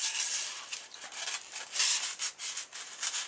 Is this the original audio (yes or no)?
yes